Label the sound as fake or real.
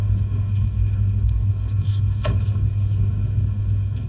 fake